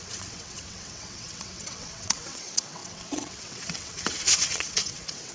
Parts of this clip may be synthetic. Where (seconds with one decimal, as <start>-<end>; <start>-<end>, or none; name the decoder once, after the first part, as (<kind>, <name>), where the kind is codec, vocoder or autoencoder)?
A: 0.0-5.3 (vocoder, WaveNeXt)